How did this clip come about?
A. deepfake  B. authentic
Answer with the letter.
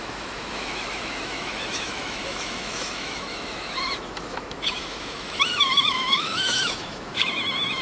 A